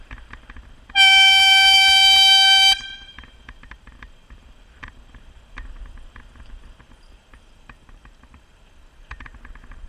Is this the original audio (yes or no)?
no